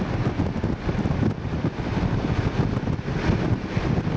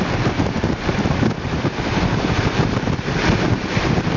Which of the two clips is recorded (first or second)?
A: first